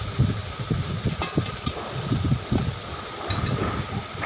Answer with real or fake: real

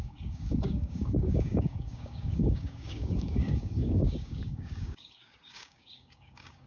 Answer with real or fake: fake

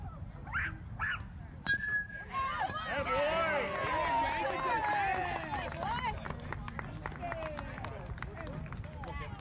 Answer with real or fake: real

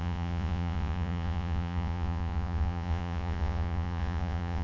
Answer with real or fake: fake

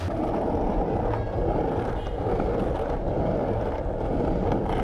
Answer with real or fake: real